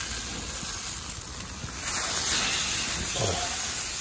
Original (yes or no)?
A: yes